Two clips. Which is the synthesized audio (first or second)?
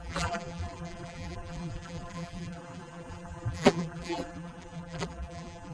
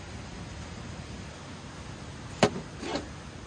first